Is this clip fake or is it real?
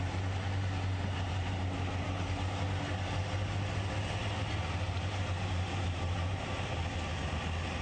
real